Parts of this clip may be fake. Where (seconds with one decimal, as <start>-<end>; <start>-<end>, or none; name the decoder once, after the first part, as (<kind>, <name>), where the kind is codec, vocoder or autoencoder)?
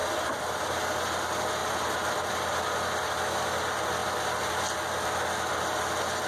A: 0.0-0.6 (vocoder, BigVGAN v2); 1.6-2.3